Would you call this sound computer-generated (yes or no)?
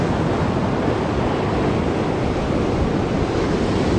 no